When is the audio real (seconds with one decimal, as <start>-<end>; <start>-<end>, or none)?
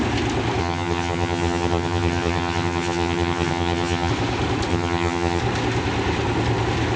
0.0-0.6; 4.1-4.7; 5.4-7.0